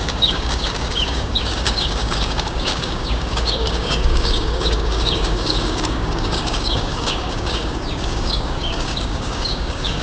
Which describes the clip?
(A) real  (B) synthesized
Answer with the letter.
B